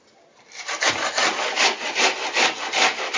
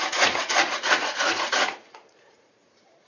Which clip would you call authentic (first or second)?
first